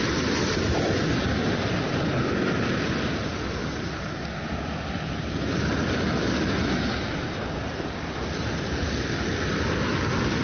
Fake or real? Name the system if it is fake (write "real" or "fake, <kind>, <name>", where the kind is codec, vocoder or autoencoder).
real